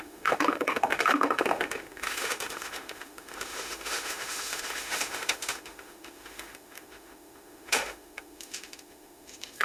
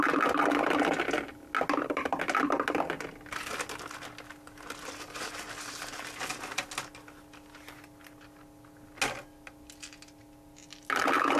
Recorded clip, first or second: second